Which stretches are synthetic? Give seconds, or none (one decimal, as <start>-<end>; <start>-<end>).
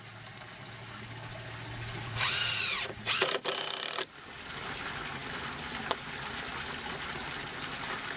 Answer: 2.0-3.3